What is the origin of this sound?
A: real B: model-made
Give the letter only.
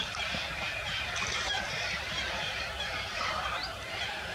B